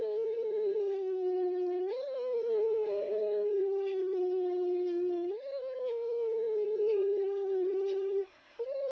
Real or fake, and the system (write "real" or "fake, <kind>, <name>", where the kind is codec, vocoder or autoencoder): fake, codec, SNAC